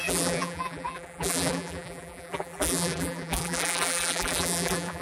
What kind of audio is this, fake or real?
fake